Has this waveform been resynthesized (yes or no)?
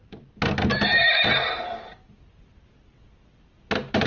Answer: no